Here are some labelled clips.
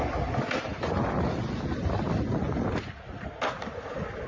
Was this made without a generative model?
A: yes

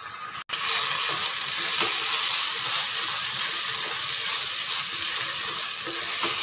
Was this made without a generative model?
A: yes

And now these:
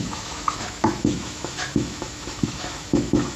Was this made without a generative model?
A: no